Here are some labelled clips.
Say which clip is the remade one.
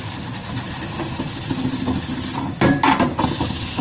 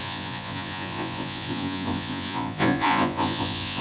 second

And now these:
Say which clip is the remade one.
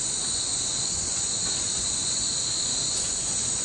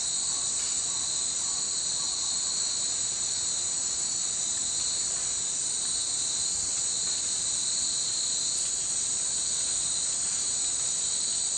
first